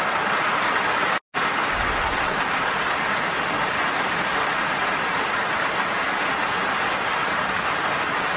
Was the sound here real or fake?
real